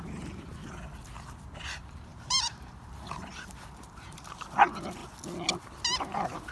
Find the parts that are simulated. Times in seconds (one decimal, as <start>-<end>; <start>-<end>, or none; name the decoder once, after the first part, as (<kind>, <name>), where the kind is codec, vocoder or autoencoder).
0.0-0.6 (vocoder, BigVGAN v2); 1.4-5.0; 6.0-6.5